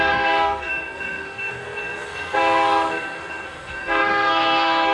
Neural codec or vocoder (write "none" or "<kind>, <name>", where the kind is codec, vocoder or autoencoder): codec, SNAC